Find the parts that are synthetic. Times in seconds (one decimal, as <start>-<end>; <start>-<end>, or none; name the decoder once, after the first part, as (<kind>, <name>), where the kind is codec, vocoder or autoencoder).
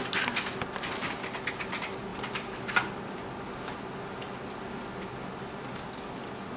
none